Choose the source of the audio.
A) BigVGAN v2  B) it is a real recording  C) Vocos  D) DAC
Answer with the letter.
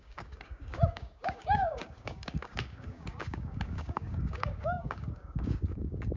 D